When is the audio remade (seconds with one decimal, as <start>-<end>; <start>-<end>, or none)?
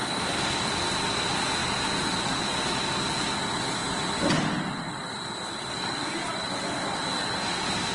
0.0-0.7; 1.6-2.3